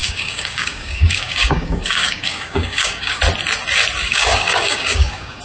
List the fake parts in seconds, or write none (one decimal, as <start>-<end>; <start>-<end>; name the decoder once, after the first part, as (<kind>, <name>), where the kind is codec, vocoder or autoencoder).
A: 0.0-3.2 (codec, DAC); 4.0-5.4